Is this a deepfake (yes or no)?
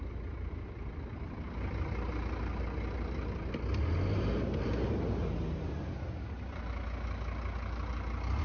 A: no